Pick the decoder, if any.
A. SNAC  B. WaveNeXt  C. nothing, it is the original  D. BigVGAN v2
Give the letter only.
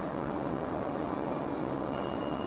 B